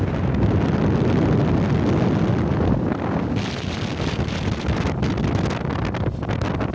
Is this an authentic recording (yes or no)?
yes